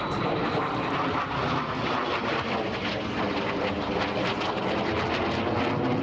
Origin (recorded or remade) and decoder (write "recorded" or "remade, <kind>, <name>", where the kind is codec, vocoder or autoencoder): recorded